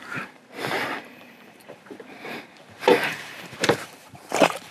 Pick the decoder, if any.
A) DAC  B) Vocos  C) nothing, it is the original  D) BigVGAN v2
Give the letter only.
D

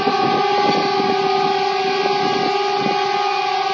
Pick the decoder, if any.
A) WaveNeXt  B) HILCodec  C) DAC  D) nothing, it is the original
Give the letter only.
D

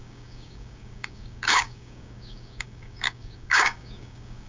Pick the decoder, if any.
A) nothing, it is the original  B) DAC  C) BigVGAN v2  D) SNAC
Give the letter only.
B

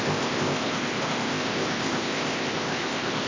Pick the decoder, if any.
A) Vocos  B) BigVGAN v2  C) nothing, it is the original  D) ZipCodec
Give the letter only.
D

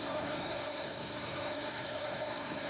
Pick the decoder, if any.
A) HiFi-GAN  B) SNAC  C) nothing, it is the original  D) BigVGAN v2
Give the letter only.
B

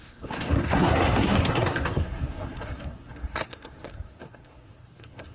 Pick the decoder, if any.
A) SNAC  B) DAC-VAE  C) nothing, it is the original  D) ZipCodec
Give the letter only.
A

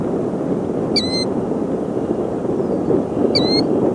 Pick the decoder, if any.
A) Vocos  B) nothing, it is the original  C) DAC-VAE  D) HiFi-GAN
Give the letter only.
B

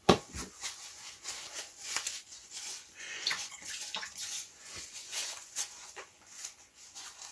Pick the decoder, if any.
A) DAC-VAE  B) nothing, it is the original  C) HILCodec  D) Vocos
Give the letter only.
D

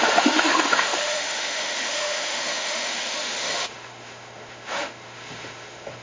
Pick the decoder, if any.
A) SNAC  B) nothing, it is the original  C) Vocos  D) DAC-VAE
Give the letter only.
D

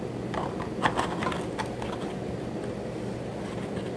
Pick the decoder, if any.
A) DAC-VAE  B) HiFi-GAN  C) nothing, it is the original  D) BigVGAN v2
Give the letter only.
C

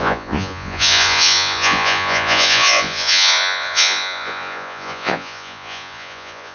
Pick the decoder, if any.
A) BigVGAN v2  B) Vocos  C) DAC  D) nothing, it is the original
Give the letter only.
B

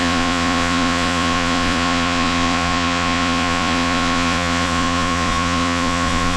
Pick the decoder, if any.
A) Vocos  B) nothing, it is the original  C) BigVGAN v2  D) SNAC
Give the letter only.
A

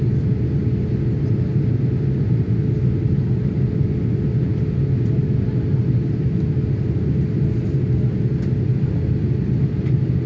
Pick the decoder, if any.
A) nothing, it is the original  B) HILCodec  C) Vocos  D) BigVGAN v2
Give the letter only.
A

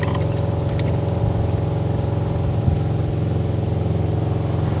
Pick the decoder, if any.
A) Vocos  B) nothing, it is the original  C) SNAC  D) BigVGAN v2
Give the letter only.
B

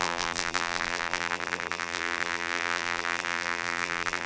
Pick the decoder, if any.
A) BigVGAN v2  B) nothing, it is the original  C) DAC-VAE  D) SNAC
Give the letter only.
A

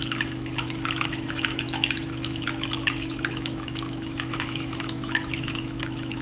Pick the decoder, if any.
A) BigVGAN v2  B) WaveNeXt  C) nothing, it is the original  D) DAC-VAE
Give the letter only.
D